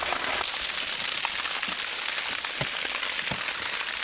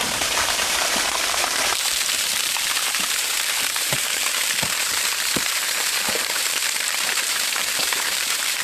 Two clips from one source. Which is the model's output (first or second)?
second